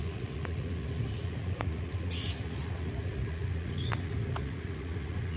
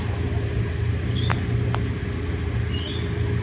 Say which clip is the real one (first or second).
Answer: second